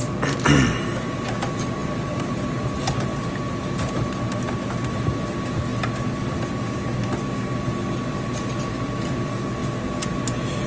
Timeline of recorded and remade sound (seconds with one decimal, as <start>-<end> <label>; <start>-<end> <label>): 0.0-10.7 recorded